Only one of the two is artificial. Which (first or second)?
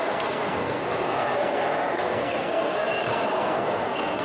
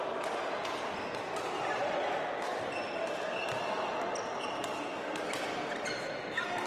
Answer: first